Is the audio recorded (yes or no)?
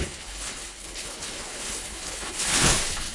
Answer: no